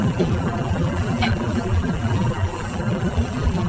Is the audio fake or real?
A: fake